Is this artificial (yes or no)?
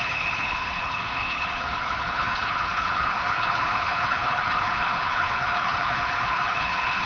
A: yes